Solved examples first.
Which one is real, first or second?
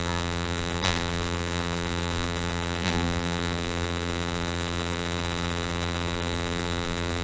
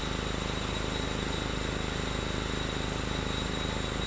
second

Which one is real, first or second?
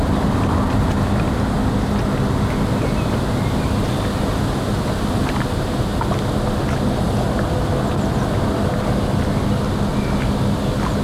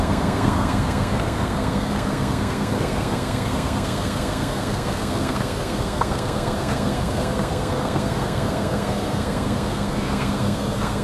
first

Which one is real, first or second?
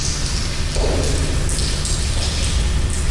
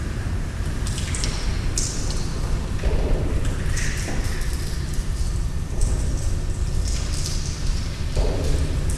first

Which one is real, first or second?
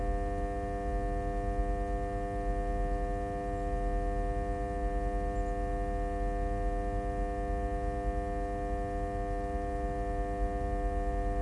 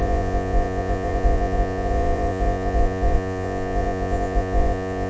first